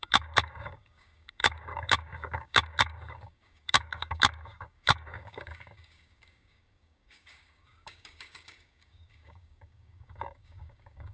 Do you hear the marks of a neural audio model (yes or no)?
yes